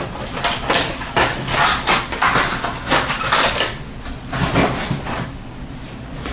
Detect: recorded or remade recorded